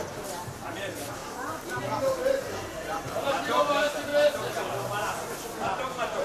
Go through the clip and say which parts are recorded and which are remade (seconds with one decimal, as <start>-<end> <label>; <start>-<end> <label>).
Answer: 0.0-4.1 remade; 4.1-6.2 recorded